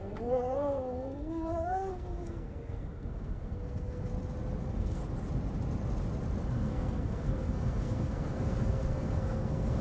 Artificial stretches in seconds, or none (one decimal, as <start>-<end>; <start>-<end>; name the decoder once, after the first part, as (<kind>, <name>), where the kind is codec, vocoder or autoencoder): 0.0-4.1 (codec, SNAC); 4.6-5.0; 6.5-9.8